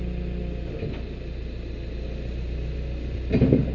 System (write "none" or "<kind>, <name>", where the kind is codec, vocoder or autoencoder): none